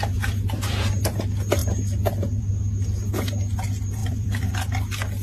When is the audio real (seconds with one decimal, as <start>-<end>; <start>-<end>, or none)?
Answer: 0.0-4.0; 4.6-5.2